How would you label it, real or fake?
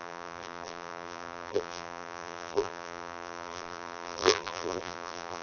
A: fake